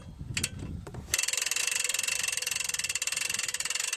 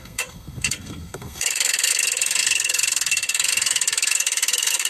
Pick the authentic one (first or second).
first